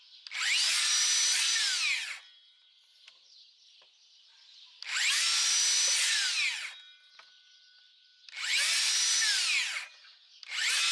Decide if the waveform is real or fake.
real